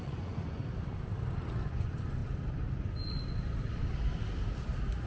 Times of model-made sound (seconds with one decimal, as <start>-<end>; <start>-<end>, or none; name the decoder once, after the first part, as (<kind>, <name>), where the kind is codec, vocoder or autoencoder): 0.0-0.6 (vocoder, Vocos); 1.7-2.2